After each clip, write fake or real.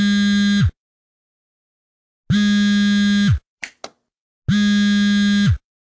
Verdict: real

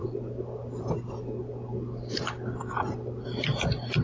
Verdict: real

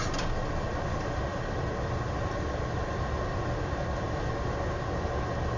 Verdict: real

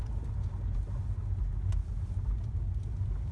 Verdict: real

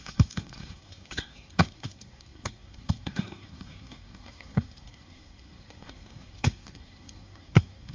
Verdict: fake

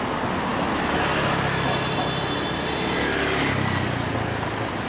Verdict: real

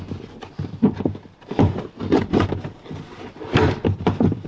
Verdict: fake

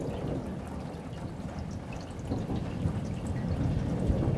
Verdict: real